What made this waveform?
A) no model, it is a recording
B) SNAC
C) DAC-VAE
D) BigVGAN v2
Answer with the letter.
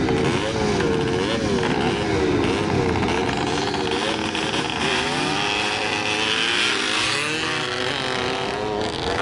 A